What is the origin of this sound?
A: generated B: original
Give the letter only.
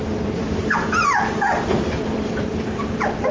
A